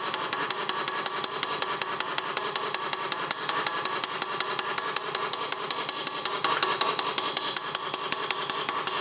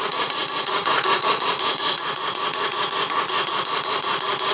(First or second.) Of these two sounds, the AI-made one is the second